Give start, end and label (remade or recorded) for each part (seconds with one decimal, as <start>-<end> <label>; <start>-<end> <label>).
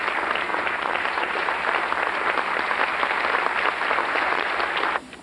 0.0-0.5 recorded; 0.5-1.5 remade; 1.5-4.0 recorded; 4.0-4.5 remade; 4.5-5.2 recorded